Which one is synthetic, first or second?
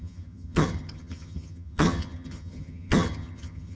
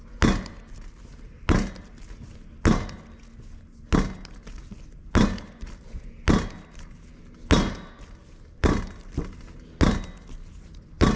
first